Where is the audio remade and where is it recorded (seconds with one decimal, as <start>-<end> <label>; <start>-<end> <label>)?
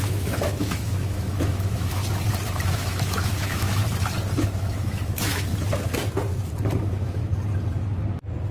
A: 0.0-2.0 remade; 2.0-2.7 recorded; 2.7-3.8 remade; 3.8-4.4 recorded; 4.4-5.5 remade; 5.5-6.8 recorded; 6.8-7.3 remade; 7.3-8.5 recorded